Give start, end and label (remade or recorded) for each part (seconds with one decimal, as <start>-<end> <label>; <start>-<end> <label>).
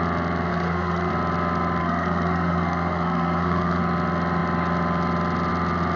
0.0-0.5 recorded; 0.5-1.1 remade; 1.1-1.8 recorded; 1.8-3.8 remade; 3.8-6.0 recorded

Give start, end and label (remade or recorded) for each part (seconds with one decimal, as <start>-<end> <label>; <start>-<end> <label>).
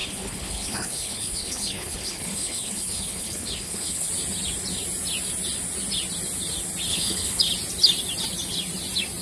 0.0-4.1 remade; 4.1-6.9 recorded; 6.9-7.4 remade; 7.4-9.2 recorded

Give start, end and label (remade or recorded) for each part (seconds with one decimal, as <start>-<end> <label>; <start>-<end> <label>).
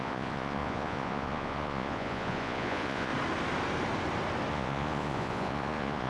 0.0-3.1 remade; 3.1-4.5 recorded; 4.5-6.1 remade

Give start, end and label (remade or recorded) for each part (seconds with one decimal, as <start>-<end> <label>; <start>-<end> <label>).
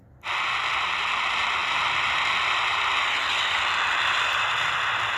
0.0-5.2 recorded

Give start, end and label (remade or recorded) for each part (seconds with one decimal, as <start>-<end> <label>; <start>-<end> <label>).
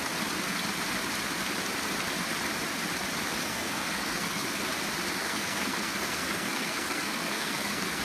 0.0-3.4 recorded; 3.4-4.6 remade; 4.6-5.2 recorded; 5.2-8.0 remade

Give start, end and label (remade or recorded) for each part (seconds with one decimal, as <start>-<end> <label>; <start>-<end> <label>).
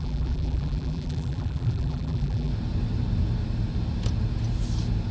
0.0-2.5 remade; 2.5-5.1 recorded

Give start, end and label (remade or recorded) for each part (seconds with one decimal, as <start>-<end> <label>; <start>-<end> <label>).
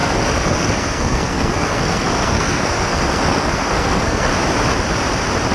0.0-4.3 remade; 4.3-5.5 recorded